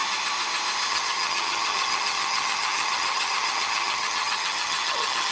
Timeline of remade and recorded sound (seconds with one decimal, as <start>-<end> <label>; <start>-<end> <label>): 0.0-0.9 recorded; 0.9-5.3 remade